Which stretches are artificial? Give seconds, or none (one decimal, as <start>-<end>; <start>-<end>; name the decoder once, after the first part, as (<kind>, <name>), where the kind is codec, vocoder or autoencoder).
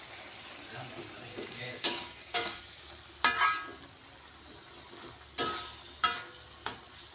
1.3-2.6 (codec, DAC)